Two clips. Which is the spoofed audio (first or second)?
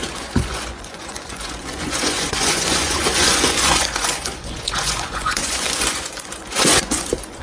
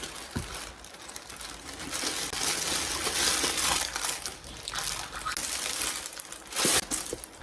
first